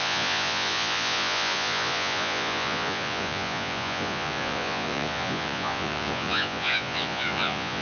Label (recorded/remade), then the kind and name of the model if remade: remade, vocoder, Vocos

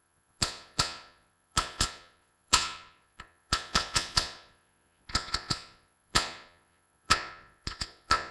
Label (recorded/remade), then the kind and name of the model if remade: remade, vocoder, Vocos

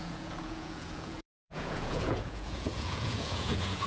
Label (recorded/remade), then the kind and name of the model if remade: remade, vocoder, Vocos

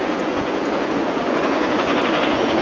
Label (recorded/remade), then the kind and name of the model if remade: remade, vocoder, Vocos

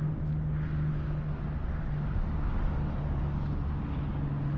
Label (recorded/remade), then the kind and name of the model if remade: recorded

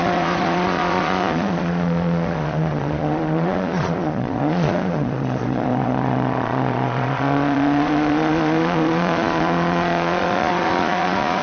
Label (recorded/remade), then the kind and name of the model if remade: remade, vocoder, Vocos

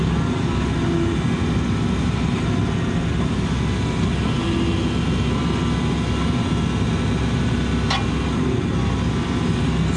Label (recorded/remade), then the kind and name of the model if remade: recorded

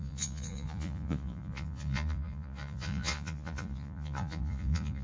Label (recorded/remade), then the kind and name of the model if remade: remade, vocoder, Vocos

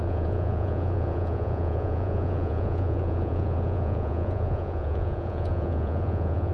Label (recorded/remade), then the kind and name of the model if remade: remade, vocoder, Vocos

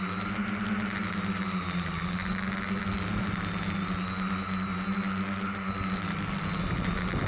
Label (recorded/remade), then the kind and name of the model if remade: recorded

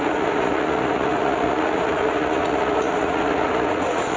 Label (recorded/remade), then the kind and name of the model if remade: remade, vocoder, Vocos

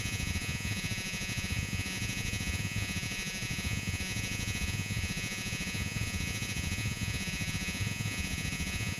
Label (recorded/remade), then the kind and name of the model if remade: remade, vocoder, Vocos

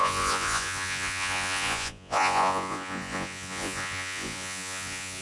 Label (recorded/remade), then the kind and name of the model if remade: remade, vocoder, Vocos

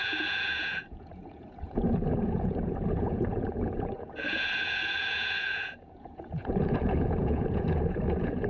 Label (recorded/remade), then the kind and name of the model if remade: remade, vocoder, Vocos